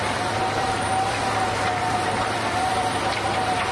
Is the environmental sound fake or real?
fake